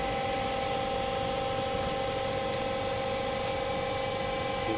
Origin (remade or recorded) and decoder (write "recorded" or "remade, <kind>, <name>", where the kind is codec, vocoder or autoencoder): recorded